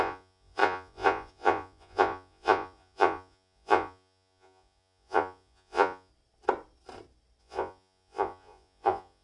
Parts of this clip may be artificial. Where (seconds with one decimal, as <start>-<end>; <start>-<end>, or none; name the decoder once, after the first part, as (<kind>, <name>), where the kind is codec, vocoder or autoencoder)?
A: 0.0-6.1 (vocoder, Vocos); 7.4-9.2